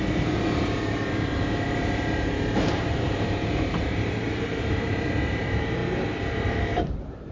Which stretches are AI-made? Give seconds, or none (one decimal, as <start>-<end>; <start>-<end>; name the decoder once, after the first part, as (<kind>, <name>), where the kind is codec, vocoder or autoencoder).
0.0-7.3 (vocoder, BigVGAN v2)